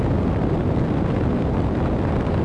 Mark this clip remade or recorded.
recorded